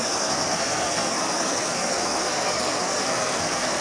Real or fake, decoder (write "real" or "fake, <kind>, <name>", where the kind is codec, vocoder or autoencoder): fake, codec, SNAC